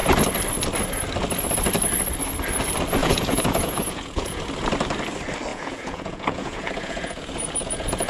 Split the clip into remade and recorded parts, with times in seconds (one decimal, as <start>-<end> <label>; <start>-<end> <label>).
0.0-3.0 recorded; 3.0-4.4 remade; 4.4-5.5 recorded; 5.5-8.1 remade